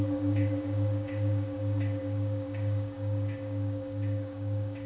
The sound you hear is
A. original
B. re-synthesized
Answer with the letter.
B